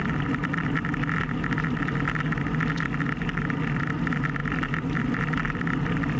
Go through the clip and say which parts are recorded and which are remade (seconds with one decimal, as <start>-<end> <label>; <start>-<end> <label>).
0.0-1.8 remade; 1.8-4.4 recorded; 4.4-5.6 remade; 5.6-6.2 recorded

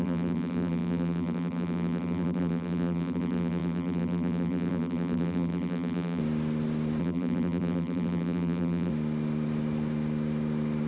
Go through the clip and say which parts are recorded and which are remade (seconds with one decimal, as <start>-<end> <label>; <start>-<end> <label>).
0.0-6.2 remade; 6.2-7.0 recorded; 7.0-8.9 remade; 8.9-10.9 recorded

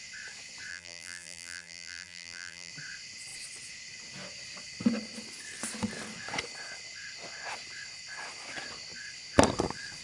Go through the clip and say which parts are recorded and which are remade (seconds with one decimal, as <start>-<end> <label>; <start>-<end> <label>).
0.0-0.7 recorded; 0.7-2.7 remade; 2.7-10.0 recorded

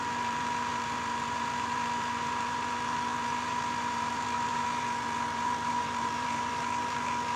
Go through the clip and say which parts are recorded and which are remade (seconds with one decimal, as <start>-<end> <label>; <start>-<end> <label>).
0.0-7.4 remade

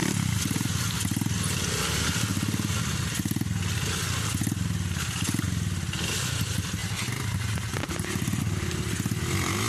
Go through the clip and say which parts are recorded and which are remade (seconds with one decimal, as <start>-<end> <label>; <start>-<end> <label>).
0.0-9.7 recorded